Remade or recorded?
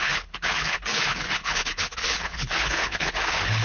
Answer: remade